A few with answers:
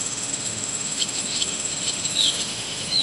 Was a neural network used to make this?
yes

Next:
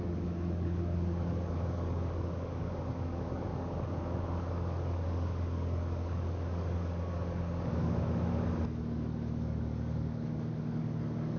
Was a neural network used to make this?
yes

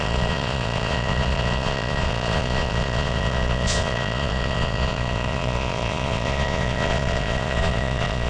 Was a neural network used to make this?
yes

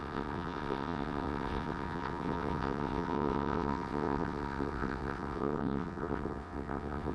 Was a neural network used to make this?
yes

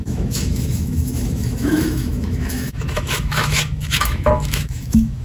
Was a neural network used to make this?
yes